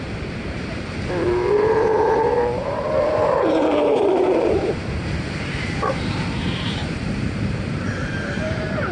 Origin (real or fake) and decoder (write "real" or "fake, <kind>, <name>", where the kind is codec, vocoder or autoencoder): fake, vocoder, BigVGAN v2